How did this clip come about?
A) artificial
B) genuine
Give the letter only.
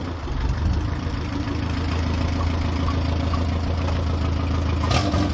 B